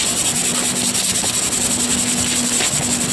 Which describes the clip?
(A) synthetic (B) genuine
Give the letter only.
B